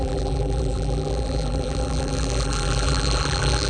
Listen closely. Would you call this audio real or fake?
fake